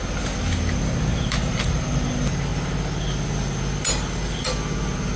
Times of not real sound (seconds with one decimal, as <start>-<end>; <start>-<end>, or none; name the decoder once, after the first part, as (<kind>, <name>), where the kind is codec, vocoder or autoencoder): 1.1-1.6 (vocoder, BigVGAN v2)